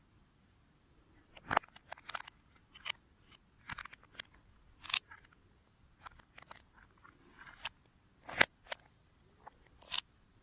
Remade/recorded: recorded